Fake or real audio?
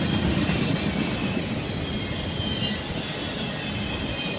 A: real